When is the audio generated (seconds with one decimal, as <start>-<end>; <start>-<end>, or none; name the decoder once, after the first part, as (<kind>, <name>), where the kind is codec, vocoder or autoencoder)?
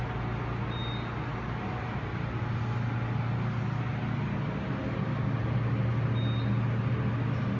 none